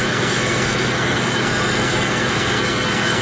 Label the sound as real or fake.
fake